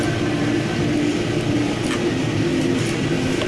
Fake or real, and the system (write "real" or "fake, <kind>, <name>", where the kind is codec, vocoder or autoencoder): real